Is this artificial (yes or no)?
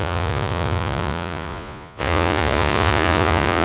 yes